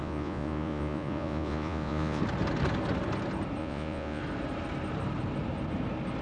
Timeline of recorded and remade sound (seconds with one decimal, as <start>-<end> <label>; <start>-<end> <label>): 0.0-2.2 remade; 2.2-3.6 recorded; 3.6-4.2 remade; 4.2-6.2 recorded